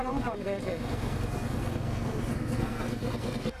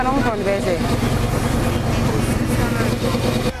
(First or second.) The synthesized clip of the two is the first